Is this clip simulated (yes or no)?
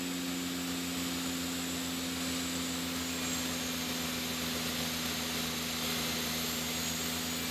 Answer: no